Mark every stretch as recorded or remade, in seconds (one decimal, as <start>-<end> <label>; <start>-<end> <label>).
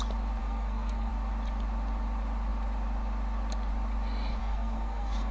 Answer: 0.0-0.4 recorded; 0.4-1.1 remade; 1.1-4.4 recorded; 4.4-5.3 remade